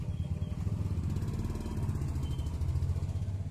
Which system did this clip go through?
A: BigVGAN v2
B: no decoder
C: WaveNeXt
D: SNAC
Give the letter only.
B